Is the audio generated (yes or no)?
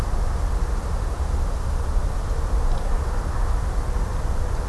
no